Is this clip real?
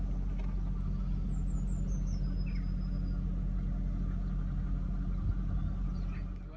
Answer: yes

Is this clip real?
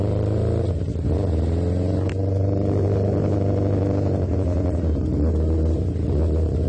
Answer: yes